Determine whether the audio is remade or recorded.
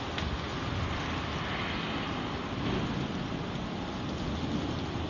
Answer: recorded